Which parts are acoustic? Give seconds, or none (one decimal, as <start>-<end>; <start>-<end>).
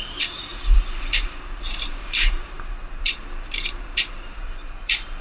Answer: none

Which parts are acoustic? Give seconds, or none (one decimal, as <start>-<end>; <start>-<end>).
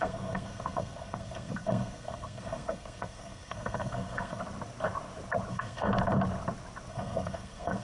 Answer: 4.4-5.5; 5.9-6.9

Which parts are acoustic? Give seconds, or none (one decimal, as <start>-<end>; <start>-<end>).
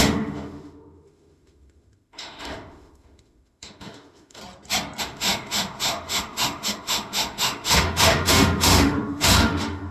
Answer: 4.4-5.0